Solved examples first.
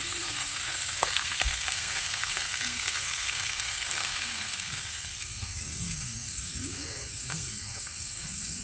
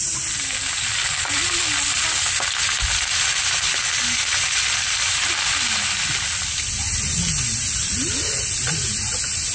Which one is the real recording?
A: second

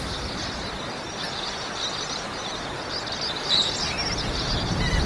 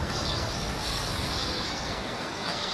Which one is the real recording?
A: first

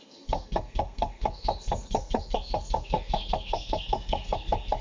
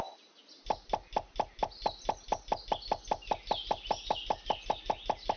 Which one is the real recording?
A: second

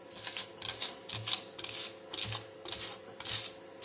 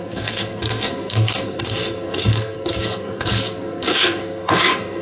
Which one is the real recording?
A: first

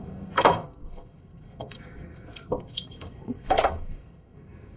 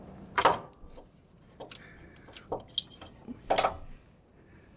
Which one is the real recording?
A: second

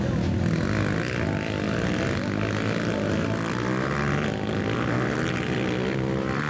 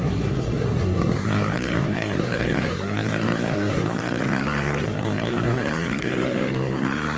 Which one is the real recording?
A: first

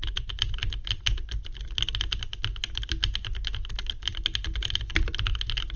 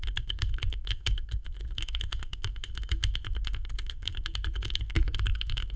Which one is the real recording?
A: first